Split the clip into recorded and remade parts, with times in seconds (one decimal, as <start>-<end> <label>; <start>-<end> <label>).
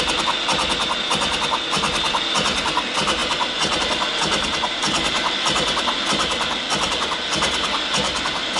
0.0-6.0 recorded; 6.0-6.9 remade; 6.9-8.6 recorded